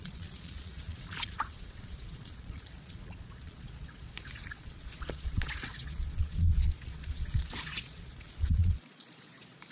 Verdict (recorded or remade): remade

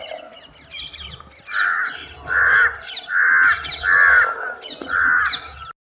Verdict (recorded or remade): recorded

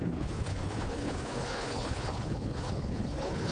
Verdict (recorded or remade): remade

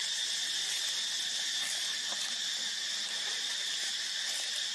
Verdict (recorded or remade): recorded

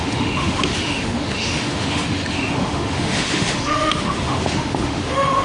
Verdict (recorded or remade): remade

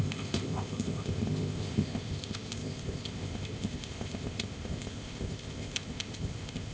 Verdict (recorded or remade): remade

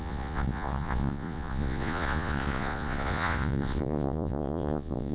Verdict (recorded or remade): remade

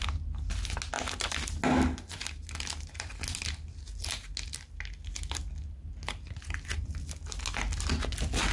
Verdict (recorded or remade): recorded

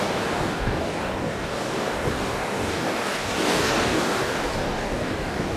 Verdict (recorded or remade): remade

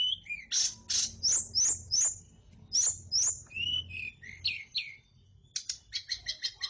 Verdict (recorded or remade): recorded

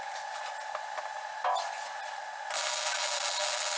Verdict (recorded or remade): recorded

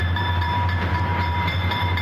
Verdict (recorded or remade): remade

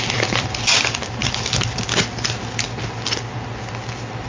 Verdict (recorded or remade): recorded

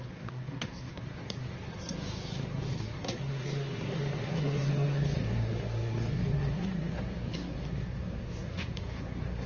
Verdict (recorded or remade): remade